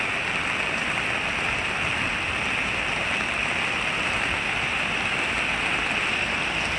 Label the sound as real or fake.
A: real